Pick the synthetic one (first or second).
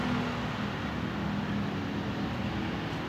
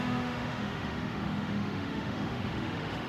second